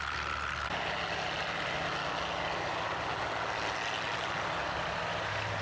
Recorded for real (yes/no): yes